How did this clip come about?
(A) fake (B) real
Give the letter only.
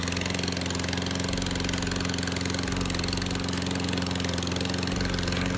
B